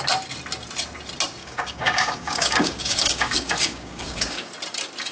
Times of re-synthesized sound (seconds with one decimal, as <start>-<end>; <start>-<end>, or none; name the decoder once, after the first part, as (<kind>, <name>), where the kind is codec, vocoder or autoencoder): 1.4-4.5 (codec, DAC)